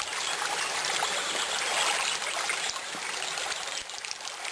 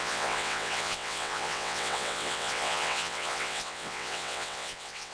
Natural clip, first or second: first